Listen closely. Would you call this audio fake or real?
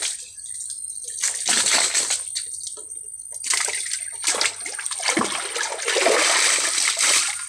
real